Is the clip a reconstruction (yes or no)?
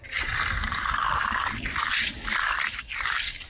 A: no